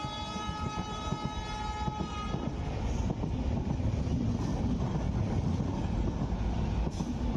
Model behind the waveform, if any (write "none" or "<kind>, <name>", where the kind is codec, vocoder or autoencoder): none